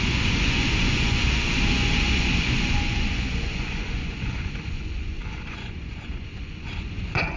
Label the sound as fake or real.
fake